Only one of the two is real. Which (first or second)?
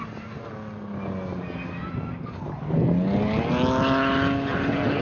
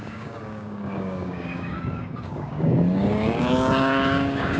first